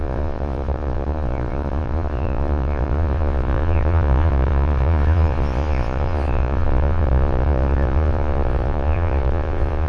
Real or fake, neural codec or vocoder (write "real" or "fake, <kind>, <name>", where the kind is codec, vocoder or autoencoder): fake, vocoder, Vocos